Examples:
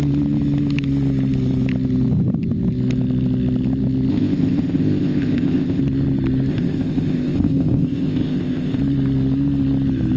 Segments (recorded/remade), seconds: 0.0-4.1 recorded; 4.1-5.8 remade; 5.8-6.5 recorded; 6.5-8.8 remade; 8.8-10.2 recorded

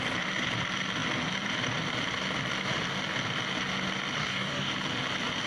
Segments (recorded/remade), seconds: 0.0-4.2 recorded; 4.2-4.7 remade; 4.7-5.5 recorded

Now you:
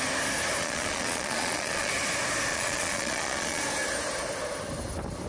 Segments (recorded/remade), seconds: 0.0-0.6 recorded; 0.6-1.9 remade; 1.9-2.5 recorded; 2.5-3.6 remade; 3.6-5.3 recorded